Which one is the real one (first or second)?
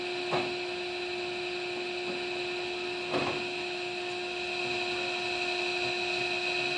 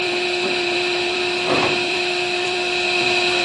first